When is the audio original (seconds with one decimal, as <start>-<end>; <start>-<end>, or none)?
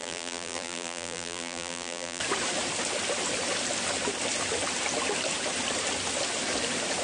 2.2-7.0